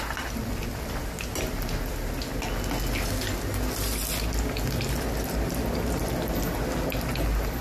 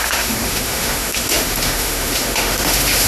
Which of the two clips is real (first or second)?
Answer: first